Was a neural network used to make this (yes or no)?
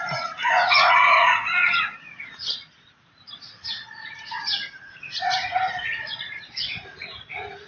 yes